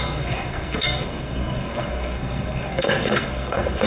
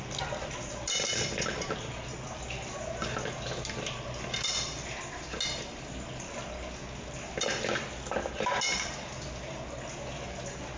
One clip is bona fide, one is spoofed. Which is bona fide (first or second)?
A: second